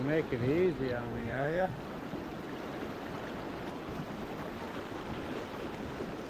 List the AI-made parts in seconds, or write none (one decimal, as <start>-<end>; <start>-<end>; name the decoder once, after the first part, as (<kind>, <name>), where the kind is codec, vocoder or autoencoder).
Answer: 1.2-1.8 (autoencoder, DAC-VAE)